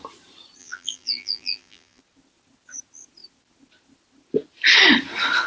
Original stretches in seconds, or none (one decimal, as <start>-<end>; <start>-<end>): 0.0-0.6; 2.0-5.5